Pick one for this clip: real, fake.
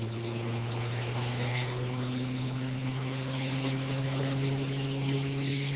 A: fake